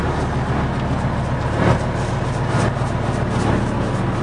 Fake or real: real